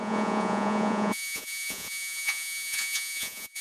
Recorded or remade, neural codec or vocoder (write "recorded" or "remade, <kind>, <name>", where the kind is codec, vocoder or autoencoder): remade, vocoder, Vocos